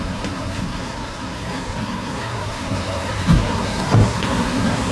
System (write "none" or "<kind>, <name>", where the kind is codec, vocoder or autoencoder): codec, SNAC